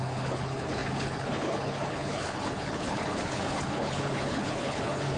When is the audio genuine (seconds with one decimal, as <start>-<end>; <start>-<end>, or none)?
none